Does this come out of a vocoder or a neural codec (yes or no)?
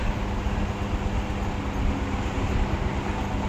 no